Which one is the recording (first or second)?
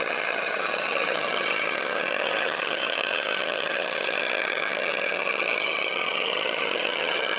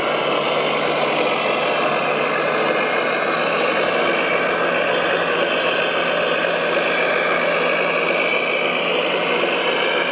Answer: second